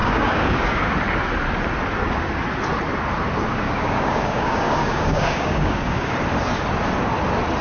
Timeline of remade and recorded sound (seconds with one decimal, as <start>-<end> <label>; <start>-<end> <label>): 0.0-0.9 remade; 0.9-3.5 recorded; 3.5-6.1 remade; 6.1-7.6 recorded